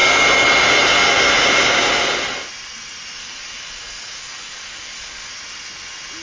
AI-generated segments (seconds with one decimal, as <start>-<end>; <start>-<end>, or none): 3.2-5.3